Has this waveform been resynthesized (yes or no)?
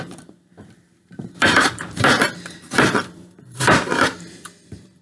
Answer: yes